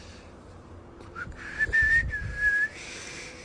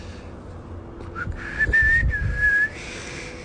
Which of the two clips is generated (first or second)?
first